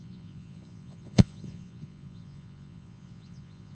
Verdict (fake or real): fake